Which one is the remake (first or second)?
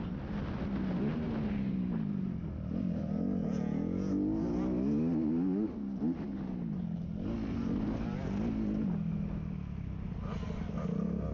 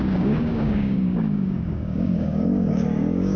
second